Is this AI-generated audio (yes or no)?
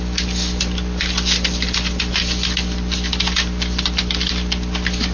no